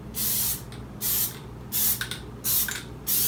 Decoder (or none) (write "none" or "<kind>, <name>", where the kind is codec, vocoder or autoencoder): none